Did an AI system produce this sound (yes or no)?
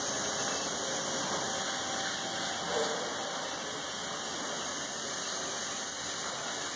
no